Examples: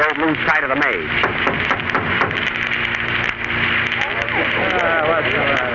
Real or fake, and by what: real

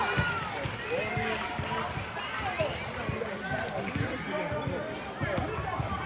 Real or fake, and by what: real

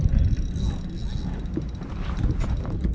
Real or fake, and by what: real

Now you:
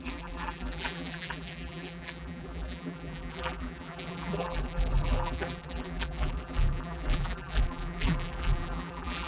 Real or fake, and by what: fake, vocoder, BigVGAN v2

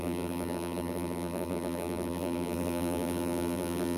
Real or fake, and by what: fake, vocoder, BigVGAN v2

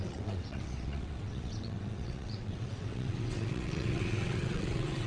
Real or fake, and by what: fake, vocoder, WaveNeXt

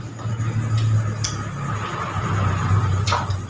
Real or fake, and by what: real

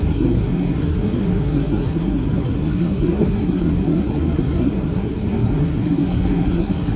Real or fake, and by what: fake, codec, SNAC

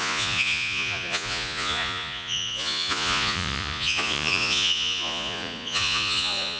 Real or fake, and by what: fake, vocoder, Vocos